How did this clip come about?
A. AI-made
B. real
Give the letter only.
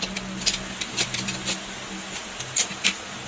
B